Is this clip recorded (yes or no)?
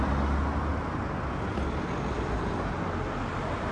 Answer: yes